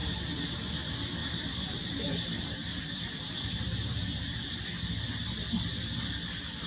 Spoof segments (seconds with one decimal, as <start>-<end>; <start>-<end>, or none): 0.0-0.6; 1.2-4.6

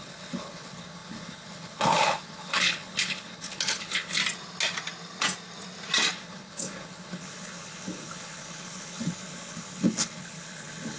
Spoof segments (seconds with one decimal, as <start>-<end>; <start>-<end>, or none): 0.0-4.2; 6.1-11.0

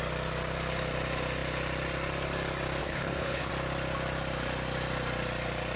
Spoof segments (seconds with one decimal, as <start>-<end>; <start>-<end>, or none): 2.8-3.5

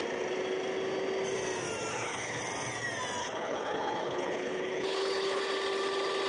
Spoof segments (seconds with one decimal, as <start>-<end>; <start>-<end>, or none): 1.9-2.4; 3.2-5.4

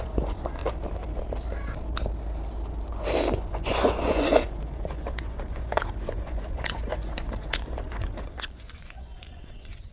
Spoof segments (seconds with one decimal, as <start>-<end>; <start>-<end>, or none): 0.0-0.6; 3.3-9.9

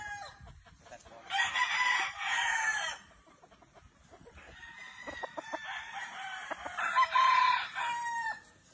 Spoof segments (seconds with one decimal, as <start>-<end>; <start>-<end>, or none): 0.0-8.7

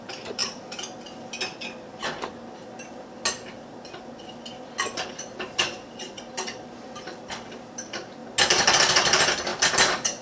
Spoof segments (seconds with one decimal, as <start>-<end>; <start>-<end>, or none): 0.0-0.4; 5.1-8.2; 8.8-10.2